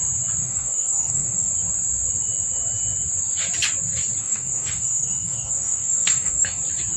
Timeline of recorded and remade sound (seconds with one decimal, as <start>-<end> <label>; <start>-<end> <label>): 0.0-0.4 recorded; 0.4-1.5 remade; 1.5-4.2 recorded; 4.2-6.6 remade; 6.6-7.0 recorded